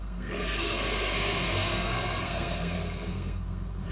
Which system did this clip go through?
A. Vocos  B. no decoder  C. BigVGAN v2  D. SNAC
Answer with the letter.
D